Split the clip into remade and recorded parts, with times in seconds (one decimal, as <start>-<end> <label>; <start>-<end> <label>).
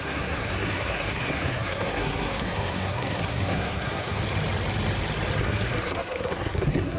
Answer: 0.0-4.2 remade; 4.2-5.4 recorded; 5.4-7.0 remade